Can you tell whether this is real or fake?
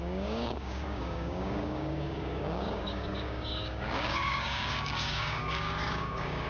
fake